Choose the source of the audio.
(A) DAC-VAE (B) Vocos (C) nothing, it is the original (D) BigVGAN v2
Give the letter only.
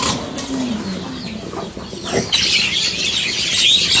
C